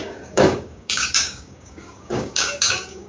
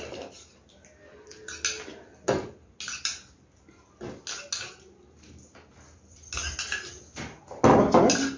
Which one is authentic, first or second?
second